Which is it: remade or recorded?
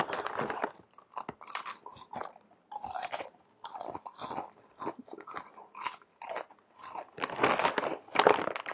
recorded